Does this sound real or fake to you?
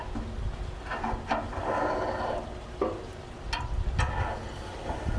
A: real